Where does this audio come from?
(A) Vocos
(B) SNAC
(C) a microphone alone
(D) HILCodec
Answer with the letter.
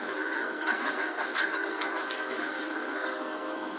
B